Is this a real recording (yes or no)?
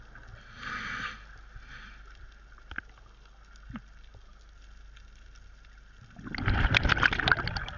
yes